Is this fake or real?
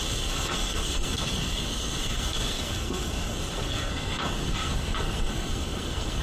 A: fake